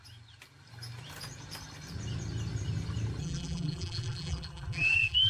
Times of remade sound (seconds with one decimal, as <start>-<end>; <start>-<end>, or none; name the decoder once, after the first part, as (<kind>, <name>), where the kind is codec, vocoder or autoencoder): 3.2-5.3 (vocoder, BigVGAN v2)

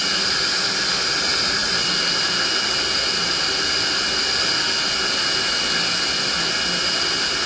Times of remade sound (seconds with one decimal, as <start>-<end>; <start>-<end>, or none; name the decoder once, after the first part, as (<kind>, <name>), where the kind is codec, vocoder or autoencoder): 1.6-5.5 (vocoder, BigVGAN v2)

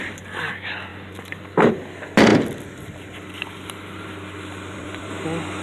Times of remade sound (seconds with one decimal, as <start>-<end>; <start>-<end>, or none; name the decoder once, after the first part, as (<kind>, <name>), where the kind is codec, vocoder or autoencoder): 0.9-1.7 (vocoder, BigVGAN v2); 2.3-5.1

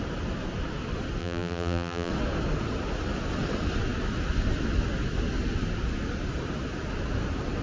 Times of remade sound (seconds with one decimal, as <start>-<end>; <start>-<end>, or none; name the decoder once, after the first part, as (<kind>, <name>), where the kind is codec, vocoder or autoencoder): 1.2-2.1 (vocoder, BigVGAN v2)

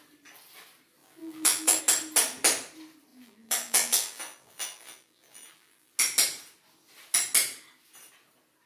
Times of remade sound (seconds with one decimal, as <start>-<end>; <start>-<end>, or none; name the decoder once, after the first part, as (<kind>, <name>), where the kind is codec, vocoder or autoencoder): 1.0-1.8 (vocoder, BigVGAN v2); 3.1-5.9